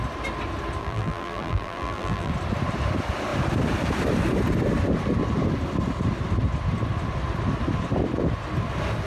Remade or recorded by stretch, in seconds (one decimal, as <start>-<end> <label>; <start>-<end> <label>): 0.0-0.8 recorded; 0.8-2.3 remade; 2.3-9.1 recorded